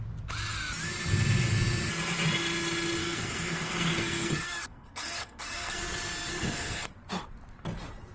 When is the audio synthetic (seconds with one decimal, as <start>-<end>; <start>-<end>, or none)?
3.0-5.8; 6.3-6.9